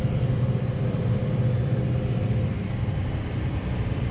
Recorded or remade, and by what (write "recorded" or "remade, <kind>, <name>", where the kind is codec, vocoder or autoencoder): remade, vocoder, BigVGAN v2